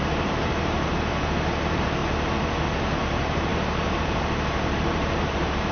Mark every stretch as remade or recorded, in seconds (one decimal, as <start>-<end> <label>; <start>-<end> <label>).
0.0-2.0 remade; 2.0-3.0 recorded; 3.0-3.5 remade; 3.5-4.0 recorded; 4.0-5.7 remade